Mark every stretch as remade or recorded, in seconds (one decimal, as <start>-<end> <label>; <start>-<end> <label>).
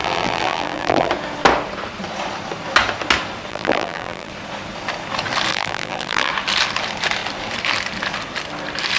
0.0-1.1 remade; 1.1-3.5 recorded; 3.5-4.3 remade; 4.3-5.5 recorded; 5.5-6.3 remade; 6.3-9.0 recorded